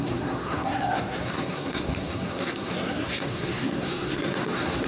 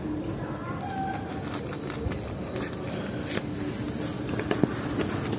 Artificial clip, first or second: first